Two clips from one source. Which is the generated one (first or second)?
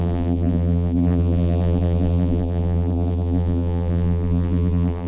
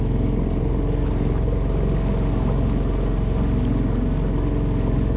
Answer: first